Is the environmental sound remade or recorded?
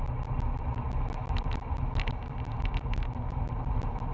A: recorded